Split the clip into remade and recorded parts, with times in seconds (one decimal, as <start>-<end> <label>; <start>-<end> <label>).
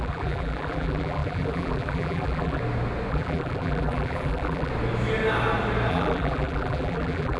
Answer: 0.0-2.6 remade; 2.6-3.1 recorded; 3.1-4.7 remade; 4.7-5.9 recorded; 5.9-7.4 remade